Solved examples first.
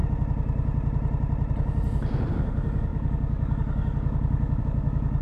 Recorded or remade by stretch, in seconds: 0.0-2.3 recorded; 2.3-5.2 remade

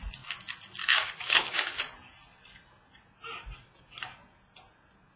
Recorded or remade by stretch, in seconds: 0.0-0.8 recorded; 0.8-1.8 remade; 1.8-5.2 recorded

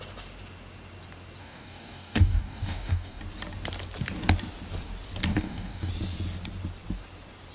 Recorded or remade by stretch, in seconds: 0.0-1.4 recorded; 1.4-3.2 remade; 3.2-5.3 recorded; 5.3-5.9 remade; 5.9-7.5 recorded

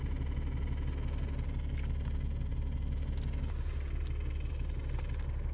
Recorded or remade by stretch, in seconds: 0.0-5.5 recorded

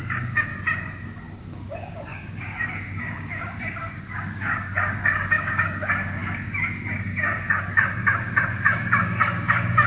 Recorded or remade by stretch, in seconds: 0.0-0.5 remade; 0.5-1.4 recorded; 1.4-9.9 remade

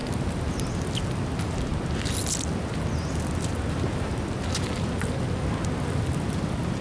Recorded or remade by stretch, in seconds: 0.0-6.8 recorded

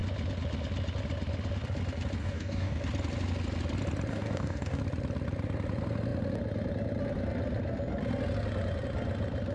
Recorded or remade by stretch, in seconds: 0.0-2.2 recorded; 2.2-2.8 remade; 2.8-4.1 recorded; 4.1-4.8 remade; 4.8-9.5 recorded